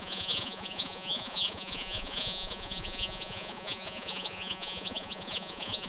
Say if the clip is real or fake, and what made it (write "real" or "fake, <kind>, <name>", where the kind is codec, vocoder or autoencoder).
fake, vocoder, Vocos